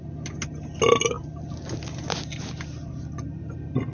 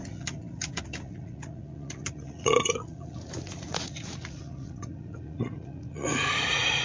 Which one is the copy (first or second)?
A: second